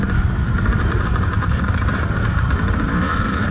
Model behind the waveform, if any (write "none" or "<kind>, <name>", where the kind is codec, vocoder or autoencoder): vocoder, BigVGAN v2